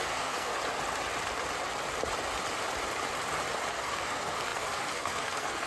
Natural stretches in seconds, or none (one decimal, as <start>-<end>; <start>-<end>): 0.5-3.7